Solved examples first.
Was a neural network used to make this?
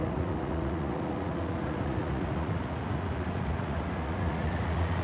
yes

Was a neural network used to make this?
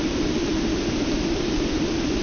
no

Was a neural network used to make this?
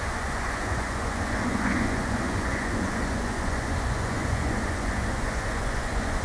yes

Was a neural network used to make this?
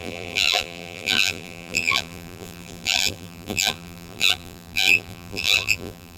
yes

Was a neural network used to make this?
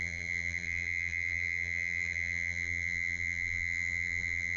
yes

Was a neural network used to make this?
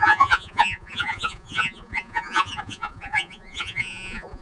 yes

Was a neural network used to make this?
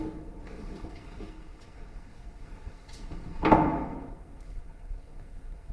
yes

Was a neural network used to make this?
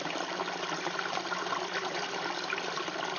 no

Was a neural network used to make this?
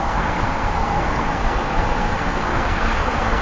yes